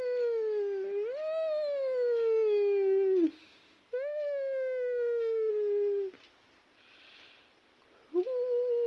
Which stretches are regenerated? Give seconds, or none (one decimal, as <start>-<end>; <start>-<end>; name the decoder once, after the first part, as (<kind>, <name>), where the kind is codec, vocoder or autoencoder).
3.4-5.5 (autoencoder, DAC-VAE)